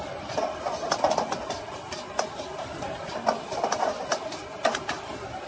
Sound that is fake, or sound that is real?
real